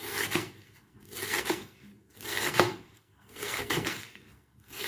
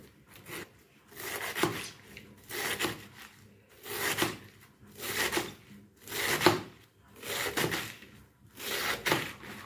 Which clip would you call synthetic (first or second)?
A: first